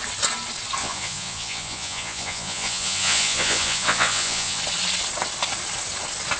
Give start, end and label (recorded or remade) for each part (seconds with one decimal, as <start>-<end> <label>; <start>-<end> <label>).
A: 0.0-0.8 recorded; 0.8-4.6 remade; 4.6-6.4 recorded

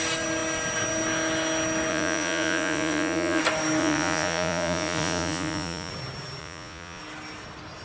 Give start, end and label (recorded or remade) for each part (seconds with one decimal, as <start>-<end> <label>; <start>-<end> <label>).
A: 0.0-1.9 recorded; 1.9-3.4 remade; 3.4-3.8 recorded; 3.8-5.9 remade; 5.9-6.4 recorded; 6.4-7.0 remade; 7.0-7.8 recorded

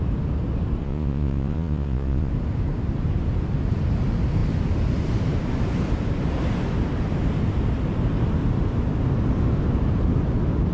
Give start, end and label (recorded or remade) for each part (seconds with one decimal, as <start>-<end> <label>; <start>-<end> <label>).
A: 0.0-0.8 recorded; 0.8-2.3 remade; 2.3-10.7 recorded

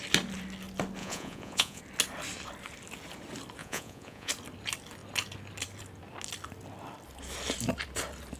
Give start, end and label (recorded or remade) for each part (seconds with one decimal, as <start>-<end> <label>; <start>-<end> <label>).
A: 0.0-1.0 recorded; 1.0-1.8 remade; 1.8-3.6 recorded; 3.6-4.3 remade; 4.3-8.4 recorded

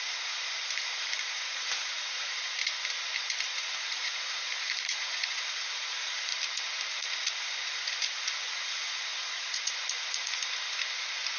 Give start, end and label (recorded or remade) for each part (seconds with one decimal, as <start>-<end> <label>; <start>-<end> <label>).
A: 0.0-2.6 remade; 2.6-3.6 recorded; 3.6-6.3 remade; 6.3-6.9 recorded; 6.9-10.4 remade; 10.4-11.4 recorded

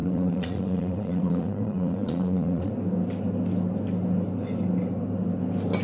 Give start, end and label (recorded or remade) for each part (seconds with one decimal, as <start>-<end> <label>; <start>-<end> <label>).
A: 0.0-2.7 remade; 2.7-5.8 recorded

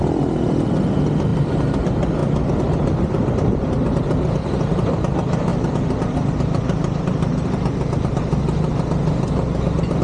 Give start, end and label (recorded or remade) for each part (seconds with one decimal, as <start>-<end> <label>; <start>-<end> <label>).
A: 0.0-10.0 recorded